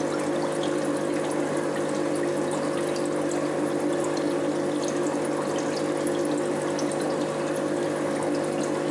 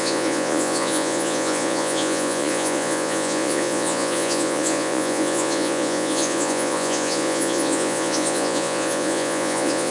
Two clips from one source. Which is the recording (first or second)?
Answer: first